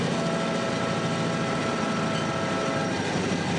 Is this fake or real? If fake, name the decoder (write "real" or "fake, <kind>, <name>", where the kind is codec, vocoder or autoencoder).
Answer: real